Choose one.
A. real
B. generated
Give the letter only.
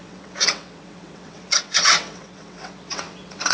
B